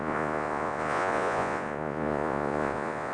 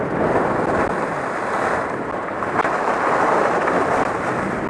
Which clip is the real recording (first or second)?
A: second